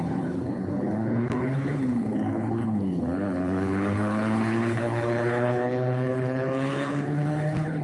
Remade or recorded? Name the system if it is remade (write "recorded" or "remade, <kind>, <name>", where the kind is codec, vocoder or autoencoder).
remade, codec, HILCodec